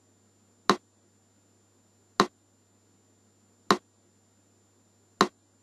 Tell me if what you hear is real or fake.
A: real